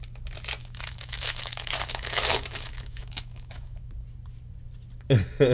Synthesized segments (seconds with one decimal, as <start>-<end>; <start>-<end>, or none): 0.6-3.9